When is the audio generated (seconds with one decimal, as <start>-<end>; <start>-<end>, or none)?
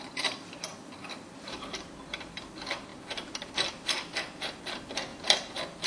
none